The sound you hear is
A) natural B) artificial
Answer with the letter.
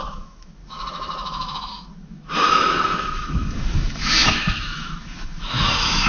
B